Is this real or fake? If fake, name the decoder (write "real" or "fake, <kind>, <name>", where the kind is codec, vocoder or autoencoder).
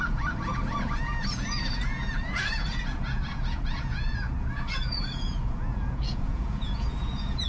fake, vocoder, Vocos